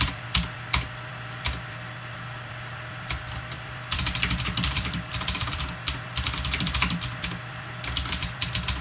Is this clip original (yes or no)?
no